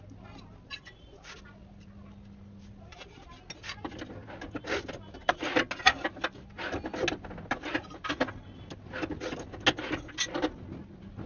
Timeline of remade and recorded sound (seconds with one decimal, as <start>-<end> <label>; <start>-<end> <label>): 0.0-11.3 recorded